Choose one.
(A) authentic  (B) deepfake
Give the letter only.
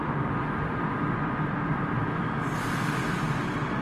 A